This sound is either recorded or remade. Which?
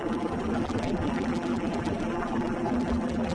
remade